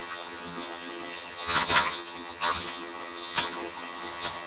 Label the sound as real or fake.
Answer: fake